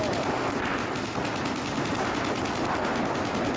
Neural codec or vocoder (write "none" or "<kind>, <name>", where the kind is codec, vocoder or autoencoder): none